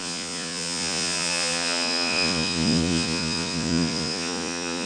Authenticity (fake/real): fake